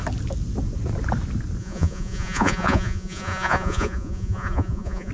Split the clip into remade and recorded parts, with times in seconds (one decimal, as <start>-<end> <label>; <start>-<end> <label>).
0.0-1.6 recorded; 1.6-5.1 remade